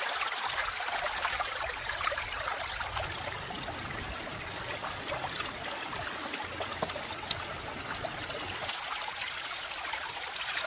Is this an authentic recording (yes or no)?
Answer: yes